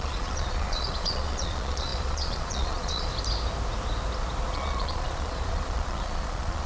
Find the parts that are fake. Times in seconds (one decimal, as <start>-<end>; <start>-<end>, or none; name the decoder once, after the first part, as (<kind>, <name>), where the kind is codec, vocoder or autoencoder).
0.0-3.1 (vocoder, Vocos); 4.5-6.7